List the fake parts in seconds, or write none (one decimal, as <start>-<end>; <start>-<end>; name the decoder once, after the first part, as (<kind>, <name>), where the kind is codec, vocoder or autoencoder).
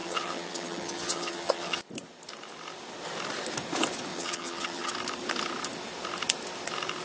0.0-1.8 (vocoder, HiFi-GAN); 4.1-4.9